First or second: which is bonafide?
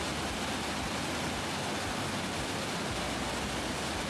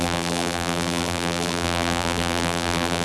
first